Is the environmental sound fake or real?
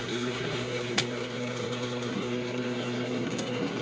fake